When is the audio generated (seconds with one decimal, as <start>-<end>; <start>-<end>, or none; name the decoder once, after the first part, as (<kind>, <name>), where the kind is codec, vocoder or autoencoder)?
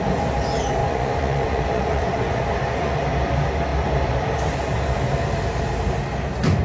0.8-3.0 (vocoder, Vocos)